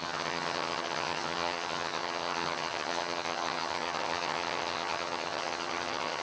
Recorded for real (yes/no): no